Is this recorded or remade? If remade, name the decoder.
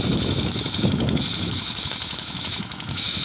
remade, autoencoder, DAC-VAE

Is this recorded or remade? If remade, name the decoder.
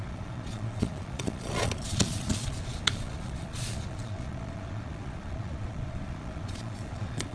remade, vocoder, Vocos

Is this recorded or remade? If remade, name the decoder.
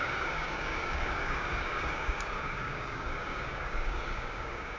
remade, codec, DAC